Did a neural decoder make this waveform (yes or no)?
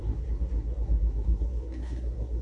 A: yes